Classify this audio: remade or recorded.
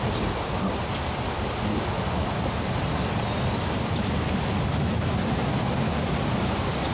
recorded